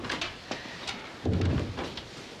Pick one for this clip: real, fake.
real